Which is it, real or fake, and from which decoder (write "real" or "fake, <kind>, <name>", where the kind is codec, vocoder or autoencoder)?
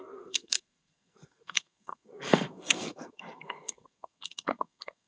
fake, codec, SNAC